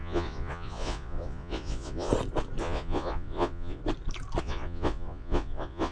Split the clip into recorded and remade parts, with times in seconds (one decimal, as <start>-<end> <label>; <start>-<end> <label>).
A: 0.0-2.1 remade; 2.1-2.6 recorded; 2.6-3.8 remade; 3.8-4.4 recorded; 4.4-5.9 remade